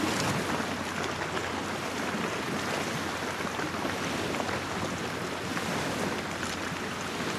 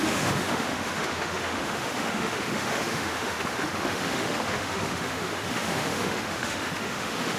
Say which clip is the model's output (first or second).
second